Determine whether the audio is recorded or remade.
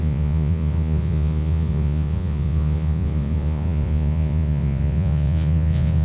remade